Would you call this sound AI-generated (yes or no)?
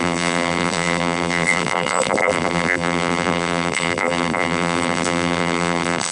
yes